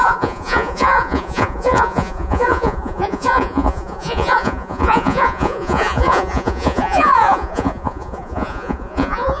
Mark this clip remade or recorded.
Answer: remade